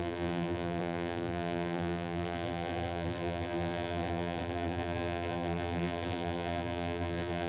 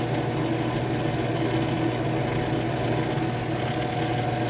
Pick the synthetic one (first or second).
first